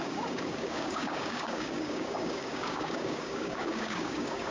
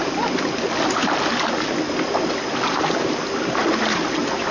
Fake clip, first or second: first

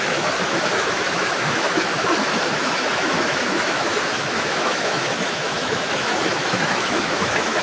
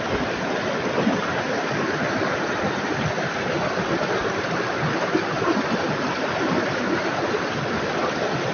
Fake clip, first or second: first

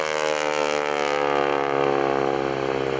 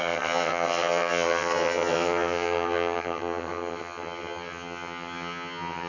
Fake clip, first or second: second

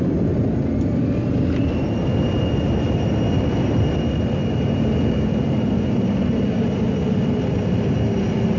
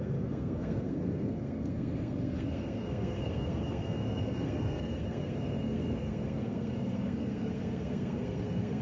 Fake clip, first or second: second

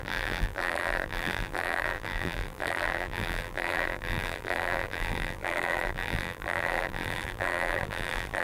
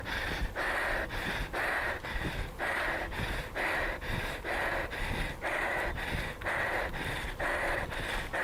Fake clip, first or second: first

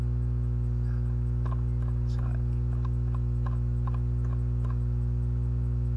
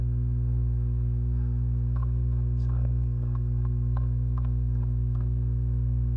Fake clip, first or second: second